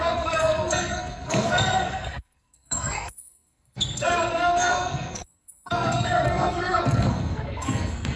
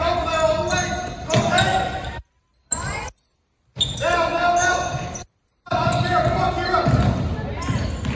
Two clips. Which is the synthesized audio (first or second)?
first